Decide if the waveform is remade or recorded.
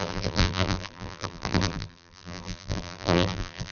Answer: remade